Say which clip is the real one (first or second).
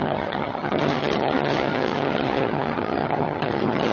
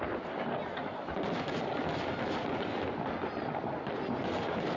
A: second